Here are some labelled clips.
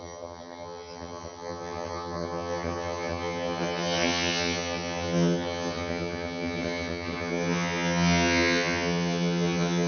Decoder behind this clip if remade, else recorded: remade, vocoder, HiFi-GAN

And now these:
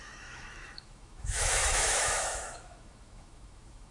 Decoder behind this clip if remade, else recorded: remade, autoencoder, DAC-VAE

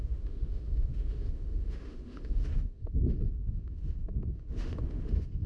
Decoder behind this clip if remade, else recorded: remade, autoencoder, DAC-VAE